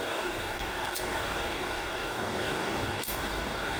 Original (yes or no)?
no